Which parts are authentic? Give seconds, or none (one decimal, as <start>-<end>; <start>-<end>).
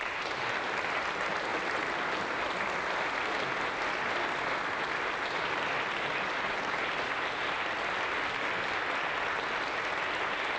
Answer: 0.0-10.6